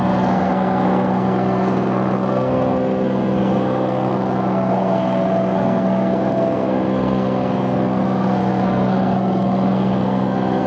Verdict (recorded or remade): remade